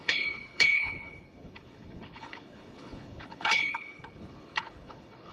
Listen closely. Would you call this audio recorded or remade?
remade